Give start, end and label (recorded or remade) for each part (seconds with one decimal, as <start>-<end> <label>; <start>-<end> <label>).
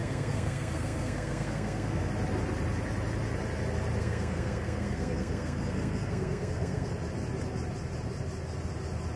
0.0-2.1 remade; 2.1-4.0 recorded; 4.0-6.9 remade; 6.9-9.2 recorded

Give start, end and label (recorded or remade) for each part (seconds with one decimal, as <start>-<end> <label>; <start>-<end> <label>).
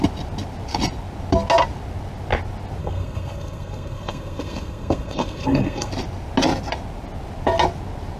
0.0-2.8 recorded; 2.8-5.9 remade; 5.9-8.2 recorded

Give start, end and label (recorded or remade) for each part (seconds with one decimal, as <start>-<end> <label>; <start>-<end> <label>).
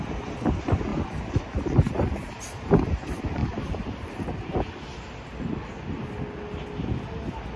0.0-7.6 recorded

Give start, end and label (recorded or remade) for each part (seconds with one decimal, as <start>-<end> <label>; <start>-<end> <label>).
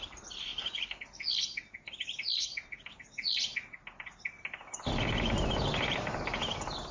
0.0-6.9 recorded